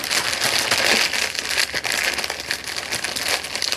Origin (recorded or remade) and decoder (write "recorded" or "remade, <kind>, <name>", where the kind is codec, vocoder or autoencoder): recorded